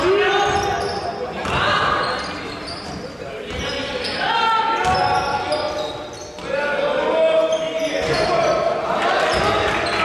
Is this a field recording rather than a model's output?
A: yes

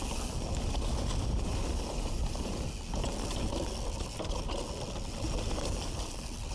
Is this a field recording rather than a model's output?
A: yes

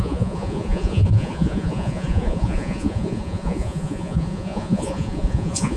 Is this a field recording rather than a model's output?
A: no